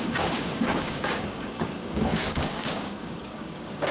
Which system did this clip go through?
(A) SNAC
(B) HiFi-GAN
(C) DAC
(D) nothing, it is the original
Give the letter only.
C